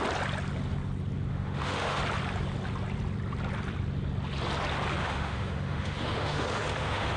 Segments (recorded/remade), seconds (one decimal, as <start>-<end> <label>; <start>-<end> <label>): 0.0-1.3 recorded; 1.3-2.0 remade; 2.0-5.0 recorded; 5.0-7.2 remade